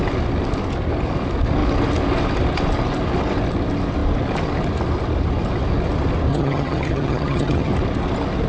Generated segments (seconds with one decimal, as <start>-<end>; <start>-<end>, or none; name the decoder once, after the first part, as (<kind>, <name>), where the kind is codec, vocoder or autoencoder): 6.3-7.7 (vocoder, HiFi-GAN)